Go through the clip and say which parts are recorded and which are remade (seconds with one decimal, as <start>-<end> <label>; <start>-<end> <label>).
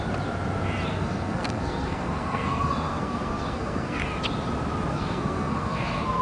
0.0-0.9 recorded; 0.9-4.0 remade; 4.0-4.9 recorded; 4.9-6.2 remade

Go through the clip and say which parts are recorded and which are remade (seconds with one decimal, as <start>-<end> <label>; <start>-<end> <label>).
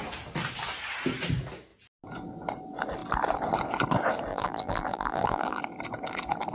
0.0-4.3 recorded; 4.3-5.6 remade; 5.6-6.5 recorded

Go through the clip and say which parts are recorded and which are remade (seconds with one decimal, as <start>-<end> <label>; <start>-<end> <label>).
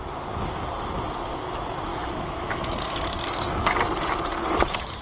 0.0-1.9 recorded; 1.9-2.5 remade; 2.5-5.0 recorded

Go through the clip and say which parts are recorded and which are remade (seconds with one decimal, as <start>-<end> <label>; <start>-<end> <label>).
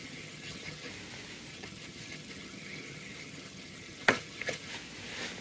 0.0-0.9 remade; 0.9-1.5 recorded; 1.5-4.7 remade; 4.7-5.4 recorded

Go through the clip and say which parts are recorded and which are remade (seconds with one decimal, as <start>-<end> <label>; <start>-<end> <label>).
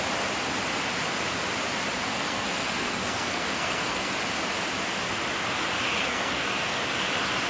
0.0-2.1 recorded; 2.1-4.1 remade; 4.1-6.0 recorded; 6.0-6.8 remade; 6.8-7.5 recorded